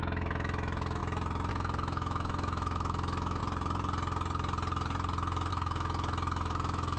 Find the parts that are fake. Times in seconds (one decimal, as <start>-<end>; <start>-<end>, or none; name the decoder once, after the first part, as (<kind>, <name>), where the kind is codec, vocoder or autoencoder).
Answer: 0.0-1.0 (autoencoder, DAC-VAE); 1.5-3.4; 5.5-7.0